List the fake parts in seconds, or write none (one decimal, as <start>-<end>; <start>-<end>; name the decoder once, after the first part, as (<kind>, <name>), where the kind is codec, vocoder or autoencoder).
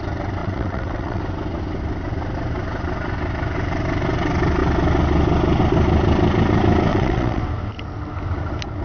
0.4-1.2 (vocoder, WaveNeXt); 6.9-7.4